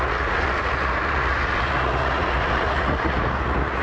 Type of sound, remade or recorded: remade